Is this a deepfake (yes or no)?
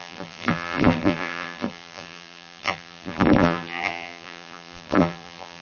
yes